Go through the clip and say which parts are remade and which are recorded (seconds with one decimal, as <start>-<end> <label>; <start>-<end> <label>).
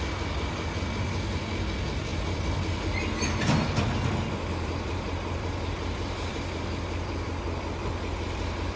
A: 0.0-8.8 recorded